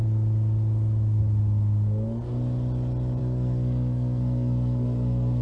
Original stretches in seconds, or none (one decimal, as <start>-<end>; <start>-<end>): 0.0-3.2